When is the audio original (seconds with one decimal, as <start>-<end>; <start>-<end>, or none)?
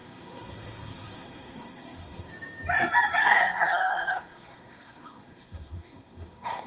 2.3-3.2